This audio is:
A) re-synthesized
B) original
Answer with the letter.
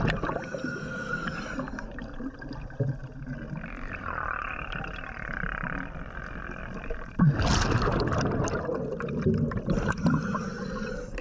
B